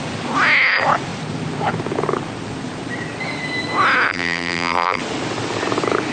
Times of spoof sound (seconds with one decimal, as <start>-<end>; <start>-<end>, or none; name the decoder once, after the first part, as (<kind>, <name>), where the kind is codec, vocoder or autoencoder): 4.1-5.0 (vocoder, BigVGAN v2)